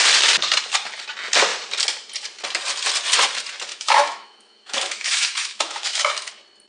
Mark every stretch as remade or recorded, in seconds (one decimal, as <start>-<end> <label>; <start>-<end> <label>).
0.0-3.7 recorded; 3.7-6.3 remade; 6.3-6.7 recorded